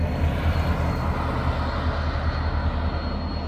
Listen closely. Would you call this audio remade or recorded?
recorded